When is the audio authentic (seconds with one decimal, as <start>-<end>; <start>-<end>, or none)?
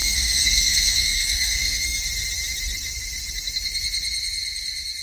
2.0-5.0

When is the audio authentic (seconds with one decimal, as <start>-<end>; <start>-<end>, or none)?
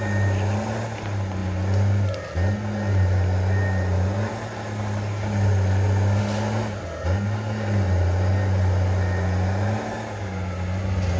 0.0-11.2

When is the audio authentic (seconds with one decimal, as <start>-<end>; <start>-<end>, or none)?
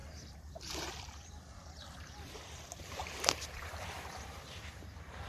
none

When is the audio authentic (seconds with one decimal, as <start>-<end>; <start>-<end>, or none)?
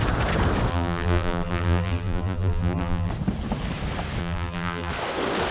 0.0-0.7; 3.1-4.2; 4.9-5.5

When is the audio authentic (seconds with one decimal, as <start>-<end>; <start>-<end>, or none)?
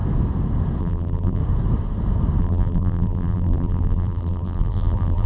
0.0-0.8; 1.4-2.4